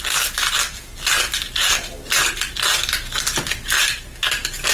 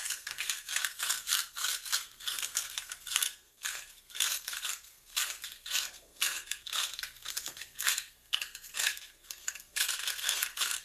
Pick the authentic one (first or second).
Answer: first